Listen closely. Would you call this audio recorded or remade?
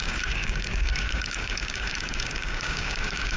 remade